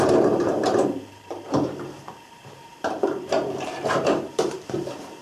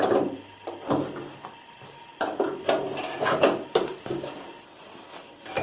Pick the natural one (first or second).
second